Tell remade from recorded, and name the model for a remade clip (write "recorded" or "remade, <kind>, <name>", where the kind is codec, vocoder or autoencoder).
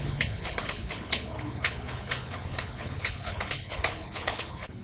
remade, codec, HILCodec